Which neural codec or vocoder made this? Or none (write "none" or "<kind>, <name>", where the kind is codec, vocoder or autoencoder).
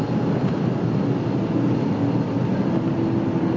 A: none